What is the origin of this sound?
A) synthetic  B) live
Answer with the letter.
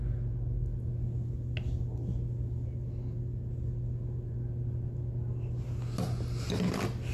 B